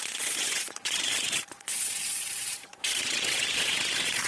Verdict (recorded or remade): remade